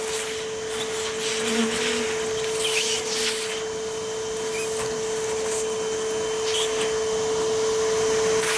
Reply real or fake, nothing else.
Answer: real